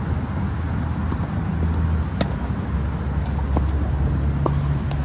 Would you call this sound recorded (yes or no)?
yes